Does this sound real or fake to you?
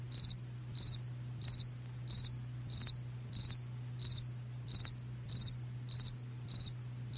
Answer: real